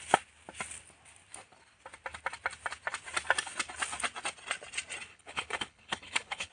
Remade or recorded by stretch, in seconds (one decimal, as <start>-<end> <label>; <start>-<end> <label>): 0.0-5.1 recorded; 5.1-6.5 remade